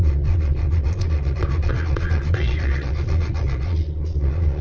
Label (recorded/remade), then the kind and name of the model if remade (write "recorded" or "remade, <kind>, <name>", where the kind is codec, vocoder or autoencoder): remade, vocoder, Vocos